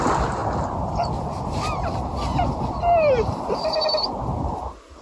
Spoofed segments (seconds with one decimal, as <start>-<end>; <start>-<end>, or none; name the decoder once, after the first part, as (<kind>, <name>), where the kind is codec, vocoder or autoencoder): none